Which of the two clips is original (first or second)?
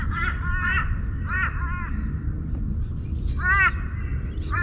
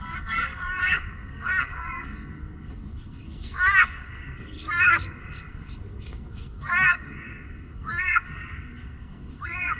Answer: first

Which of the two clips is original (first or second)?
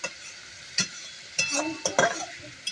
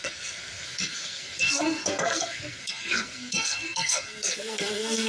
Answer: first